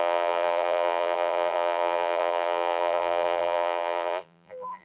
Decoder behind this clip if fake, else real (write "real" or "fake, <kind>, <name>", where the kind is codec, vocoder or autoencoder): fake, vocoder, BigVGAN v2